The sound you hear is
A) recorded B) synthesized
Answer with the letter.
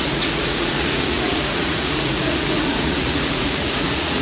B